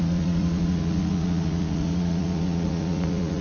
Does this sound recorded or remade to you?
remade